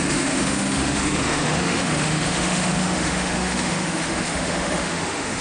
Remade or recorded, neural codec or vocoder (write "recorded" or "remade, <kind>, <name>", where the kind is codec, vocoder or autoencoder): remade, autoencoder, DAC-VAE